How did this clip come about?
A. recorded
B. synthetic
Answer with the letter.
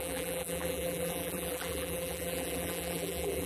B